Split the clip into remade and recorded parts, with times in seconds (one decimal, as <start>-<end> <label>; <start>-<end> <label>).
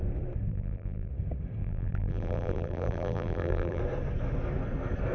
0.0-0.5 recorded; 0.5-1.1 remade; 1.1-1.6 recorded; 1.6-3.8 remade; 3.8-5.1 recorded